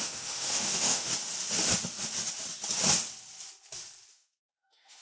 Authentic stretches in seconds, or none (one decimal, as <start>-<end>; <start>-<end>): 1.1-4.1